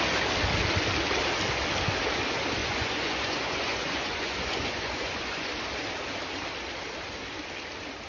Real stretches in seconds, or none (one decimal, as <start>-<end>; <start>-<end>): 0.0-2.6; 5.5-8.1